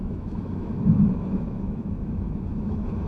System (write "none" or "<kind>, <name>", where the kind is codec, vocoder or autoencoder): autoencoder, DAC-VAE